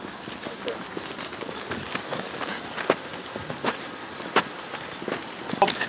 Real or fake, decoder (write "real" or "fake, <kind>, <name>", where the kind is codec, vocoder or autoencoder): real